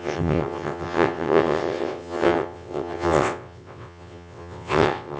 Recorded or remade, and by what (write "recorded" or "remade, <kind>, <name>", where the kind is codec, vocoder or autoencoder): remade, vocoder, WaveNeXt